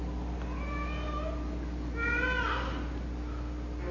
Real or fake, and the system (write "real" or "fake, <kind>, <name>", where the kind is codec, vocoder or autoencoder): real